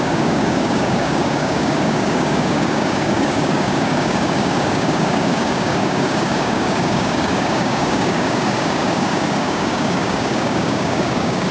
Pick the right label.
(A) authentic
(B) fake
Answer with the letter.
B